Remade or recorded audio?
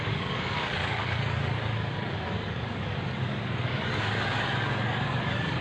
remade